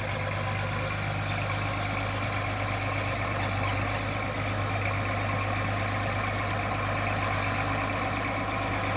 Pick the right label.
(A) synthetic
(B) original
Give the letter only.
B